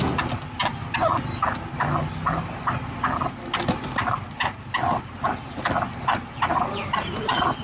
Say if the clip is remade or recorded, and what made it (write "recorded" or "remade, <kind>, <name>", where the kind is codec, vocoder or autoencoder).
recorded